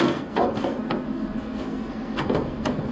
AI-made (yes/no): yes